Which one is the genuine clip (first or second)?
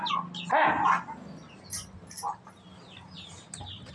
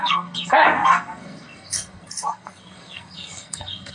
first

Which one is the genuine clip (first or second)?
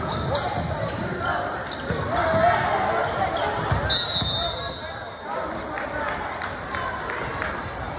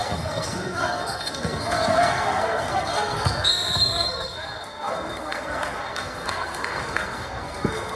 first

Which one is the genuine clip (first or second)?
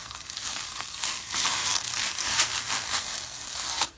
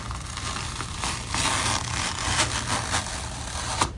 second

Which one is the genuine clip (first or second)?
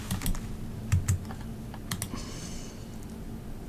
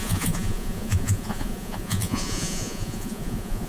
first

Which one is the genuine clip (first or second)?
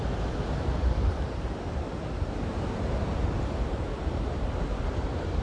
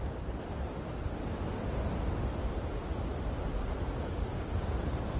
second